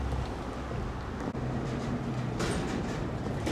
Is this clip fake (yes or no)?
no